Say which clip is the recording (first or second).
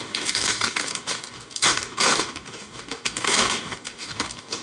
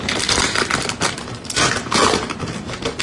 second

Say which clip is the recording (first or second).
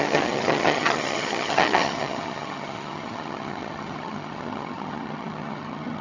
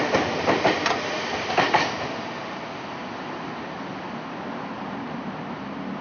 second